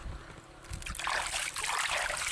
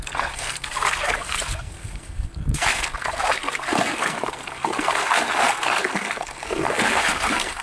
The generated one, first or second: second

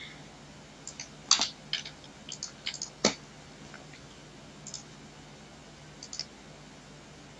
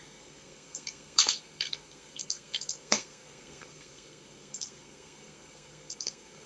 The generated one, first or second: second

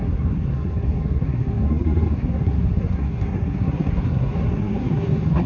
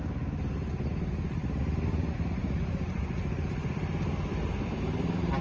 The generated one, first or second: first